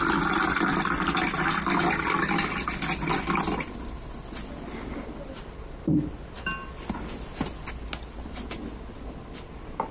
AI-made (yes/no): no